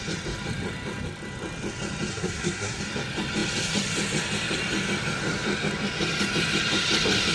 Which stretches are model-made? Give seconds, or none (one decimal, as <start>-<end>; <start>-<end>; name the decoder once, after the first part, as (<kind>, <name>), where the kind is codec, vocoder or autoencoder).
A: 2.1-2.8 (codec, SNAC)